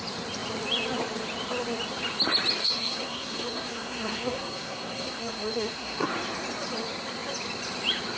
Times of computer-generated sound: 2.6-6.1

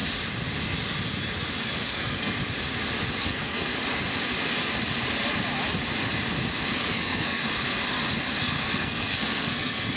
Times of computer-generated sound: 1.6-2.4; 3.2-3.7; 6.7-7.4; 8.4-10.0

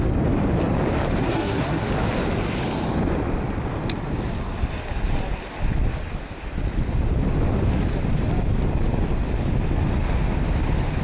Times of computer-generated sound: 1.2-1.9